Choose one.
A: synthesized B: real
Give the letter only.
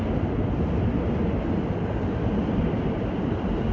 B